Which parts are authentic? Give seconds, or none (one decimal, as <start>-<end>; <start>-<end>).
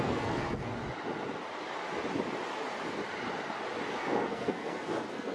0.7-3.9